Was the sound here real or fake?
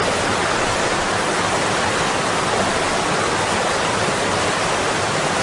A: real